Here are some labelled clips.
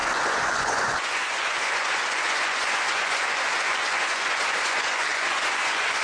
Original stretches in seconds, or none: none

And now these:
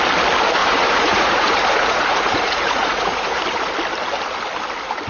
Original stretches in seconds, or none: 0.0-0.6; 3.4-5.1

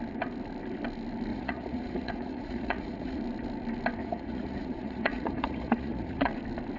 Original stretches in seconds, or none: 0.0-1.3; 3.2-4.0; 6.3-6.8

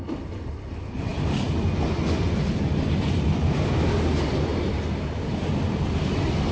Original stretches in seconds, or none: 0.0-6.5

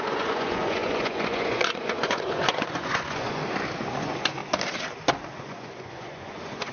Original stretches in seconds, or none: 3.4-4.0; 4.4-5.4